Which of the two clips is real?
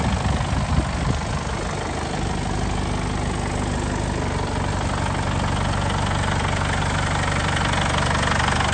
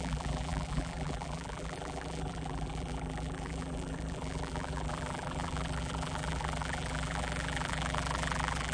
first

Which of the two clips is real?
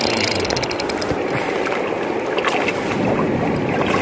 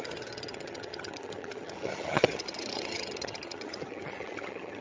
first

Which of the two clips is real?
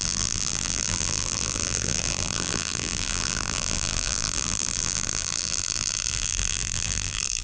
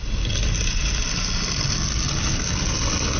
second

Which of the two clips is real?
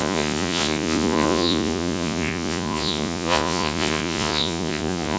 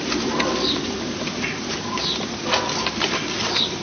second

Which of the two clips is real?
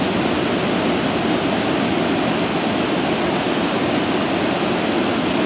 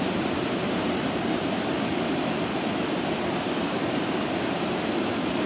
first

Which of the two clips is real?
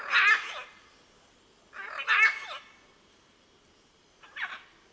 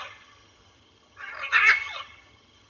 first